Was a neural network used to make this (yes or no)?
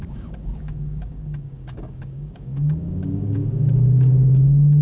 yes